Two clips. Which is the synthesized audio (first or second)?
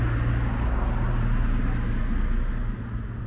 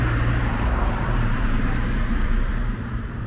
second